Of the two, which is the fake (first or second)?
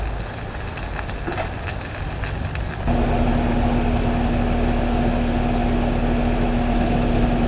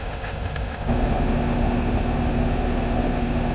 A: second